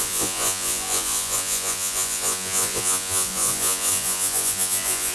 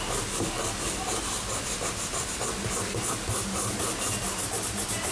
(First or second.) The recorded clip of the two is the second